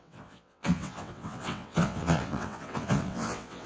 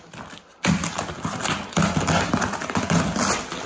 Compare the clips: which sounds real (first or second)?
second